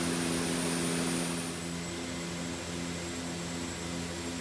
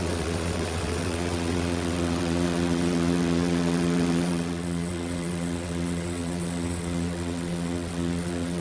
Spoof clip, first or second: second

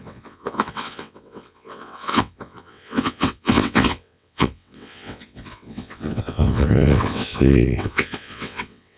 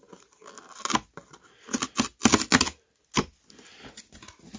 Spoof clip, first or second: first